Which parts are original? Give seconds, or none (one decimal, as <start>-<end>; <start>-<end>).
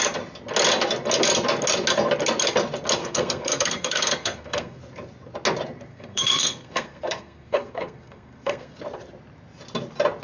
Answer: 0.0-3.0; 4.8-5.9; 8.8-10.2